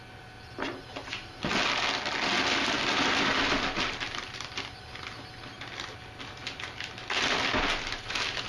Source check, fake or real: real